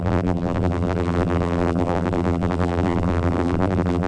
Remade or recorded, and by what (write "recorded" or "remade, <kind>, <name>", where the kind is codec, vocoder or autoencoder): remade, vocoder, BigVGAN v2